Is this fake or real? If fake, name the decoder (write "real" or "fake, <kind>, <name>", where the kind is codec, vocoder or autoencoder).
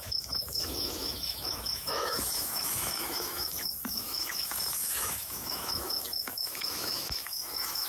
fake, autoencoder, DAC-VAE